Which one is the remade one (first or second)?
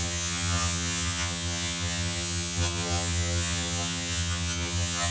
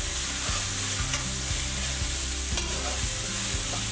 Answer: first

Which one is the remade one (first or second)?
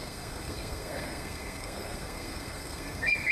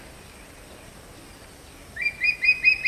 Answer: first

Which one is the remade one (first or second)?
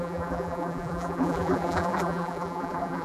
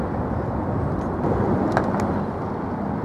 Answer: first